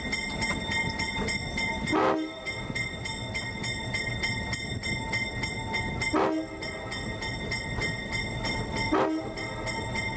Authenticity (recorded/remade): recorded